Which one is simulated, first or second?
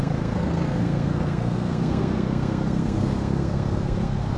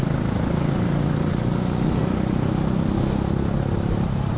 first